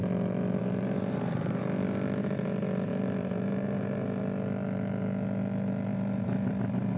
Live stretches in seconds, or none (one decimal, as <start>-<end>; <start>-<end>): 0.0-0.6; 1.6-2.9; 4.2-5.9